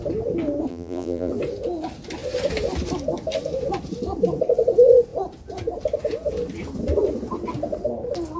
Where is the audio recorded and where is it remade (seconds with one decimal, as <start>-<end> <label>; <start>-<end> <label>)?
0.0-0.7 recorded; 0.7-1.3 remade; 1.3-8.4 recorded